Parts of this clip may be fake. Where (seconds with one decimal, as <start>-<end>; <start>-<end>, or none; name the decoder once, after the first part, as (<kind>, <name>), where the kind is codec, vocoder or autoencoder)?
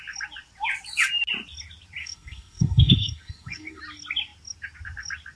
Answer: 2.0-3.8 (codec, SNAC)